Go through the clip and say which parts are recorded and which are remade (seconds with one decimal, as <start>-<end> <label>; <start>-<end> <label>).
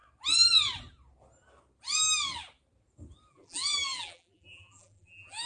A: 0.0-3.3 recorded; 3.3-5.5 remade